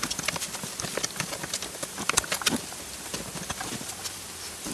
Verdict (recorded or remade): remade